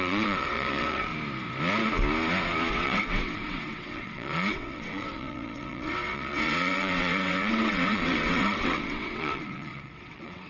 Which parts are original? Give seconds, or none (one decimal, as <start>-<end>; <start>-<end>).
1.1-2.7